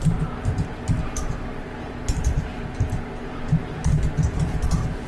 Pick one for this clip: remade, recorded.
remade